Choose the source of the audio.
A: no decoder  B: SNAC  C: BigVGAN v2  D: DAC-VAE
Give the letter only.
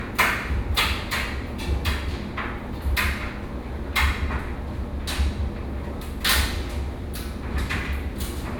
A